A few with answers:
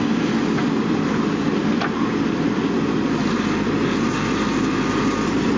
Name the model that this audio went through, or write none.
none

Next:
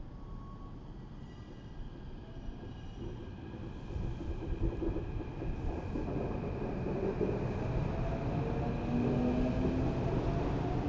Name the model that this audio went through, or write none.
none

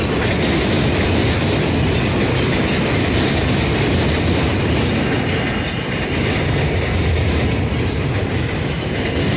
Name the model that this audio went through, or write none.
none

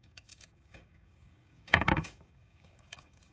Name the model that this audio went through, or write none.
codec, DAC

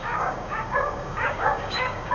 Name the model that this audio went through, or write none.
codec, DAC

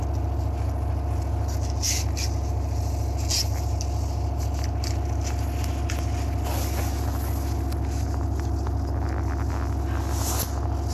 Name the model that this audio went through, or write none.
none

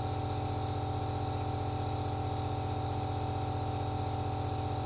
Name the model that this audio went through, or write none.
none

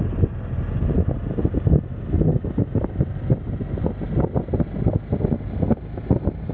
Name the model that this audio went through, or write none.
none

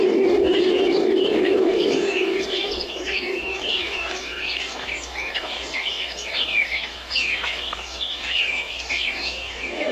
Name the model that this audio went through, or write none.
codec, DAC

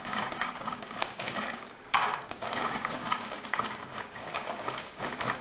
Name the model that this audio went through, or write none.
codec, DAC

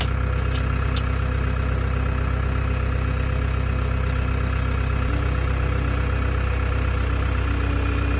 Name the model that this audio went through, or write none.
none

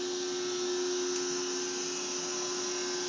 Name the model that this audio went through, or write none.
none